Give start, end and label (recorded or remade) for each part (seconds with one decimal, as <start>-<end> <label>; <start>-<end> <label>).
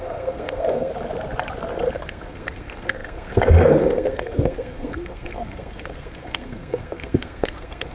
0.0-0.9 remade; 0.9-1.9 recorded; 1.9-7.9 remade